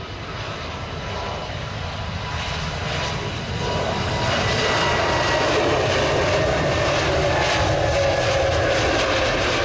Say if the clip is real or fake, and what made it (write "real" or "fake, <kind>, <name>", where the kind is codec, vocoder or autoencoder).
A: real